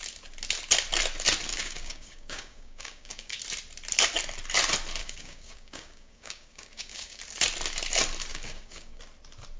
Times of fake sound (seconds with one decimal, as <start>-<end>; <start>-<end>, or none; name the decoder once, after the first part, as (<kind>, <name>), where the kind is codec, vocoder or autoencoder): 1.5-3.4 (codec, DAC); 5.0-7.2; 8.3-9.0

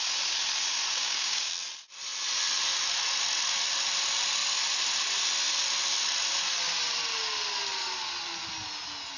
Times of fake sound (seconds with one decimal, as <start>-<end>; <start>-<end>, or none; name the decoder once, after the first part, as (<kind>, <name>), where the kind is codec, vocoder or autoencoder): 1.0-1.5 (codec, DAC)

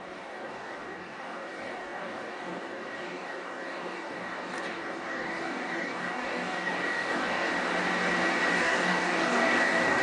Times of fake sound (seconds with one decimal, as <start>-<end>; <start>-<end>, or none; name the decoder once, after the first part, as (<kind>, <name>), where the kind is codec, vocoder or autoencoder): 0.0-7.5 (codec, DAC); 8.5-10.0

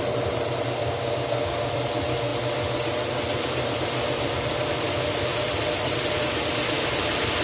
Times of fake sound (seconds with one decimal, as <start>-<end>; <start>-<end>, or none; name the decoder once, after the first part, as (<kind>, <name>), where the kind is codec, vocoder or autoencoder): 0.8-1.7 (codec, DAC)

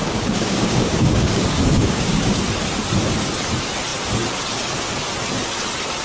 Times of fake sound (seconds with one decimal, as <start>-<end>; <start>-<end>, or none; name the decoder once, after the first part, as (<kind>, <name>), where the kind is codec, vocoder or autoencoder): 0.0-2.4 (codec, DAC)

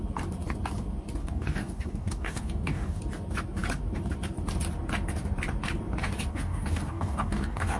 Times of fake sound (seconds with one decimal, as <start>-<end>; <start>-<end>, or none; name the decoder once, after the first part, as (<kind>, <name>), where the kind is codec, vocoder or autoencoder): 1.2-3.0 (codec, DAC); 6.3-7.8

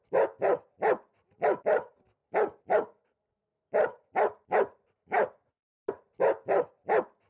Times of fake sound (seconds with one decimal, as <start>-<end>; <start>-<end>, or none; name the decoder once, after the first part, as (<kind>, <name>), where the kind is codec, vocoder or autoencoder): none

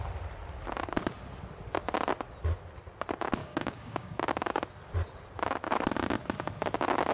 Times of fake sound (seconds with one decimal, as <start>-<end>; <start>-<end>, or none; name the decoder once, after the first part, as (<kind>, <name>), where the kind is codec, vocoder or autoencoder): 3.4-4.6 (codec, DAC)